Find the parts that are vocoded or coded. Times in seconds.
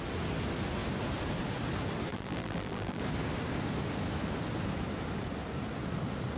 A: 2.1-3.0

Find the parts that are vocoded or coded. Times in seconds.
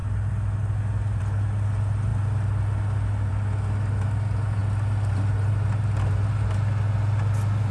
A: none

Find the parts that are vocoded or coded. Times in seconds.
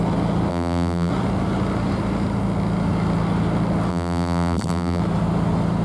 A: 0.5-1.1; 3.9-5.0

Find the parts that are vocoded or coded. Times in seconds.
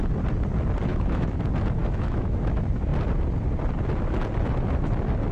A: 0.9-1.4; 1.8-2.4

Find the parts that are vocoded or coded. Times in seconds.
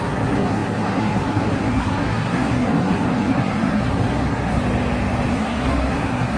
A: 0.0-4.6; 5.3-6.4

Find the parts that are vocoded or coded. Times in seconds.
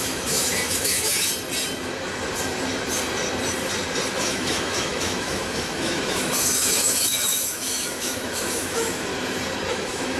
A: 0.0-1.3; 4.2-9.1; 9.7-10.2